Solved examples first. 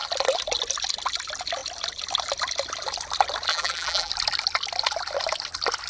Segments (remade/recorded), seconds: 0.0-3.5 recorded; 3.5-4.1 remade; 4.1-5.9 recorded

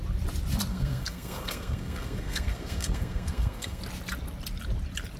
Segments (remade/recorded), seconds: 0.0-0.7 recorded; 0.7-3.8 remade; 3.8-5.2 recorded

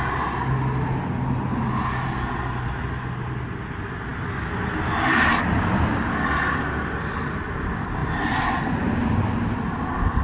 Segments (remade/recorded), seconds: 0.0-10.2 recorded

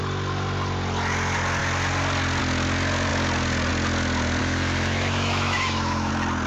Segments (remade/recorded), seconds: 0.0-4.4 recorded; 4.4-6.1 remade; 6.1-6.5 recorded